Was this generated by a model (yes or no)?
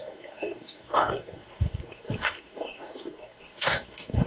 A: yes